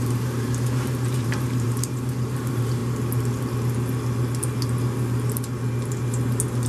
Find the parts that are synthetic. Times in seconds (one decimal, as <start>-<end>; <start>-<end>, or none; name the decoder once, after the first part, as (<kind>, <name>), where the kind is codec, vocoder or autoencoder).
0.0-2.8 (vocoder, BigVGAN v2)